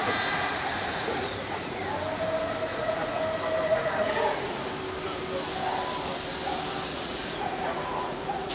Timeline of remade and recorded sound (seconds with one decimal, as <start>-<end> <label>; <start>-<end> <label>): 0.0-1.8 remade; 1.8-2.7 recorded; 2.7-3.2 remade; 3.2-3.7 recorded; 3.7-4.7 remade; 4.7-6.9 recorded; 6.9-8.5 remade